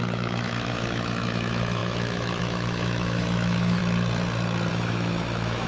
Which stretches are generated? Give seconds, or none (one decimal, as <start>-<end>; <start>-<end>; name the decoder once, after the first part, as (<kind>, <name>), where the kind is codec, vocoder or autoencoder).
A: 0.0-3.8 (autoencoder, DAC-VAE); 4.7-5.7

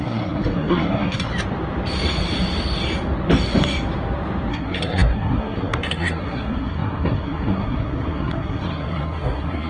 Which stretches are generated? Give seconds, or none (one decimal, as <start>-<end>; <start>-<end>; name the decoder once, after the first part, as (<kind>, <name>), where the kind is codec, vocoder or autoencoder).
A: 0.0-1.3 (codec, SNAC); 4.5-9.7

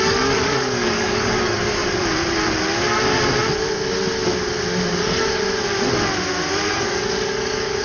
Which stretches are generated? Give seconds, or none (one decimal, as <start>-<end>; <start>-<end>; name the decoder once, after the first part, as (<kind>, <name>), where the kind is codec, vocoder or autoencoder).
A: 0.0-1.8 (codec, DAC); 4.9-5.4; 6.7-7.8

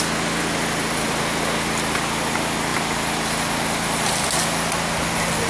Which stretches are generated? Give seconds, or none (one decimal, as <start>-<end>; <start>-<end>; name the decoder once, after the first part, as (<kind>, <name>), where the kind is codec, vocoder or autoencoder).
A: none

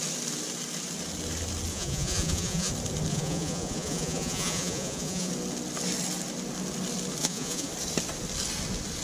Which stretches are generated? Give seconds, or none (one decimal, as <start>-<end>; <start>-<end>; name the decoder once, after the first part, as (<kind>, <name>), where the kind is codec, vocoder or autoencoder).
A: 1.7-2.7 (vocoder, Vocos); 3.1-5.3; 7.2-7.7

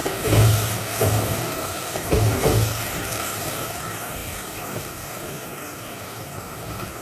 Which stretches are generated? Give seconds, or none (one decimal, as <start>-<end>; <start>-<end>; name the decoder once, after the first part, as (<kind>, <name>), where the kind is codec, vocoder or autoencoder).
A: 0.0-7.0 (codec, DAC)

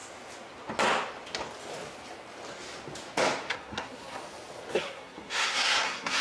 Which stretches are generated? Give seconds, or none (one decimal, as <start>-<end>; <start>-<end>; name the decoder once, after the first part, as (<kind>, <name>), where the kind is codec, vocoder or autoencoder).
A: 3.5-4.2 (codec, SNAC); 4.7-6.2

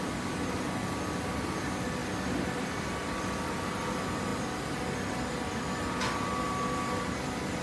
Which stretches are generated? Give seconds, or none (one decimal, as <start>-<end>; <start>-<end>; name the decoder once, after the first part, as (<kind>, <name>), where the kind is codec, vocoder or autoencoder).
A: 2.0-2.9 (vocoder, BigVGAN v2)